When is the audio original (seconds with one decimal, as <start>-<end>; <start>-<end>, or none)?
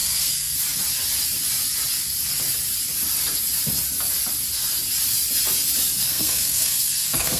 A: 0.6-6.0